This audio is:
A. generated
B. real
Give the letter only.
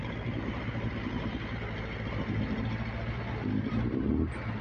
B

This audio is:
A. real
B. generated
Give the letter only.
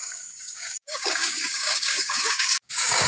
B